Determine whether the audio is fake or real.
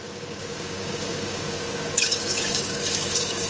fake